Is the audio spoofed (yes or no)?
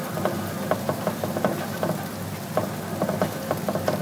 no